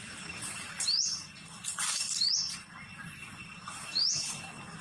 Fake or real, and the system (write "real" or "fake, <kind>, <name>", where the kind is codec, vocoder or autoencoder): real